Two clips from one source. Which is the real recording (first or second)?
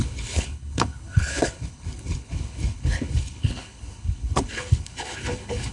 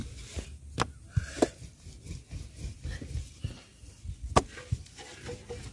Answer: second